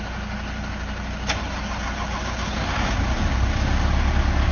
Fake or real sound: real